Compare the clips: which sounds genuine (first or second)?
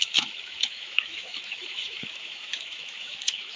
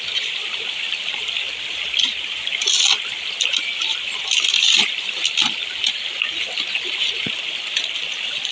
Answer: second